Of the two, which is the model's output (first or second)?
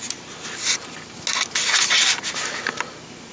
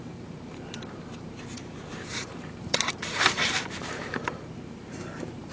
second